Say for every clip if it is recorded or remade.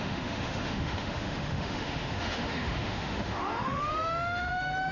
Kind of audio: remade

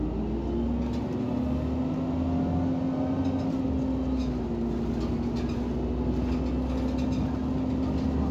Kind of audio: recorded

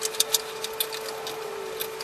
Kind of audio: recorded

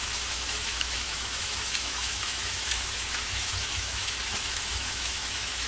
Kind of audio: remade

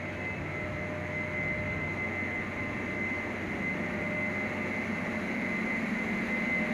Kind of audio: recorded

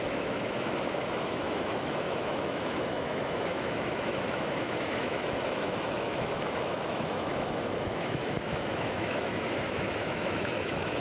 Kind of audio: remade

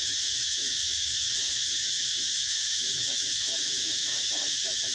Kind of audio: remade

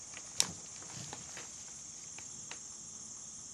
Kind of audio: recorded